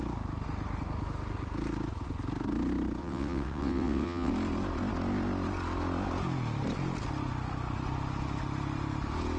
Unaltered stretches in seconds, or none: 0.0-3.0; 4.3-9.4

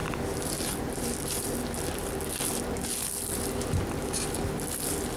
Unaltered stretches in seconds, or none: 0.0-5.2

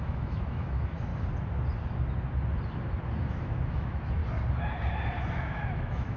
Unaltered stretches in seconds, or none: 1.1-3.3; 4.2-5.3

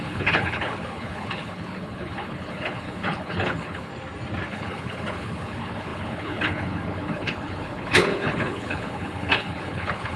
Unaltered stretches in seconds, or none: 3.9-4.5

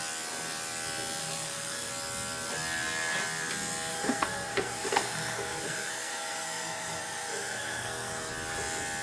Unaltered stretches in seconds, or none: 0.0-1.2; 1.9-3.9; 8.3-9.0

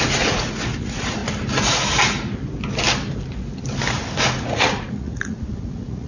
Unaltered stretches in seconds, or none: 1.2-4.3

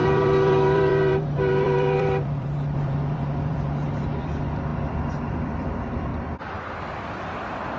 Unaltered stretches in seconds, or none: 4.7-5.3